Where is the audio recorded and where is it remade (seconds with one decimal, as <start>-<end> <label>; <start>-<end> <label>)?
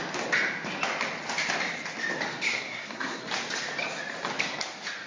0.0-2.5 recorded; 2.5-3.2 remade; 3.2-5.1 recorded